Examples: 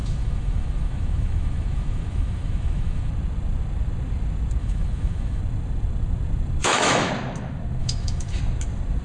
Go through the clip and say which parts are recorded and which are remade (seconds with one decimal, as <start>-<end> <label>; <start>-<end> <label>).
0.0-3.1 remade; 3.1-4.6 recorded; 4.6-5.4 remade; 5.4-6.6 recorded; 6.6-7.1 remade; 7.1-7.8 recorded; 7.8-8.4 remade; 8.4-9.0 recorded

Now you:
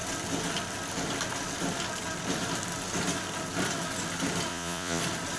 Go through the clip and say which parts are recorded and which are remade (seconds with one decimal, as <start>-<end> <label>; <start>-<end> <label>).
0.0-4.5 recorded; 4.5-5.0 remade; 5.0-5.4 recorded

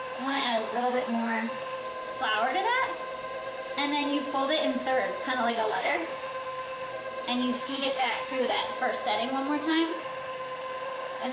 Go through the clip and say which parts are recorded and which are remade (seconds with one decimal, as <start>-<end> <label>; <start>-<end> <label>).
0.0-1.8 remade; 1.8-5.5 recorded; 5.5-6.9 remade; 6.9-7.6 recorded; 7.6-8.7 remade; 8.7-9.7 recorded; 9.7-11.3 remade

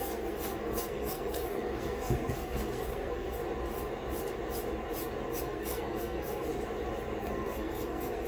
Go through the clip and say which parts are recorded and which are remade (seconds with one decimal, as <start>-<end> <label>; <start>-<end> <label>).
0.0-3.4 remade; 3.4-5.4 recorded; 5.4-6.5 remade; 6.5-7.2 recorded; 7.2-8.3 remade

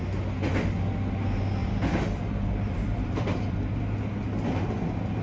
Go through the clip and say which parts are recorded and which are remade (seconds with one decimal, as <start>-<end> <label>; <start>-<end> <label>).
0.0-1.6 recorded; 1.6-3.8 remade; 3.8-5.2 recorded

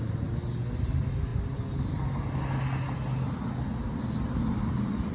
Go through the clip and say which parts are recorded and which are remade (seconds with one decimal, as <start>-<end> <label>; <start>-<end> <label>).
0.0-5.1 recorded

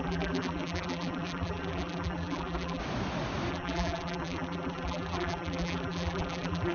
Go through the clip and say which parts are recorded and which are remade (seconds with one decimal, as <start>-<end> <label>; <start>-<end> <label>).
0.0-2.8 remade; 2.8-3.5 recorded; 3.5-6.7 remade

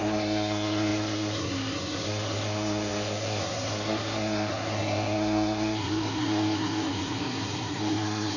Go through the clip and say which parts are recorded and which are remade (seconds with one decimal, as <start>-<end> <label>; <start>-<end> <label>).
0.0-8.4 remade